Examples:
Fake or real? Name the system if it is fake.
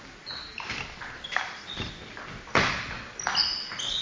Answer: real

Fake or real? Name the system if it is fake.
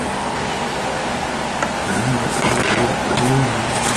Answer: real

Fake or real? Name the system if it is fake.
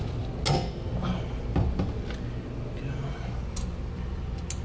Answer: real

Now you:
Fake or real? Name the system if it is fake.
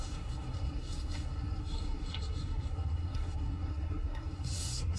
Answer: fake, codec, SNAC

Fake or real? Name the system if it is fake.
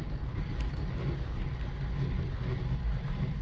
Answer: real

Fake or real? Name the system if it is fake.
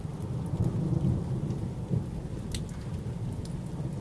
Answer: real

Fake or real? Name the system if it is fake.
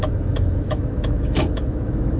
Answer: fake, autoencoder, DAC-VAE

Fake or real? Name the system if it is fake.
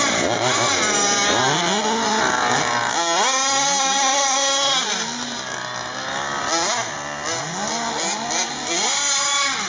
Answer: real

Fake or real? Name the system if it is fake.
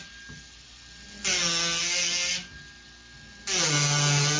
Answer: real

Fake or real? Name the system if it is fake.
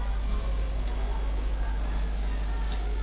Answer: real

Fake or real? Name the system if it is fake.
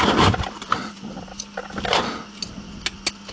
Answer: real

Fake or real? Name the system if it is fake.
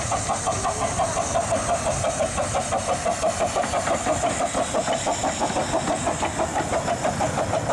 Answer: real